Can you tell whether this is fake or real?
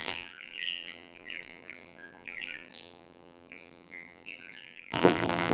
fake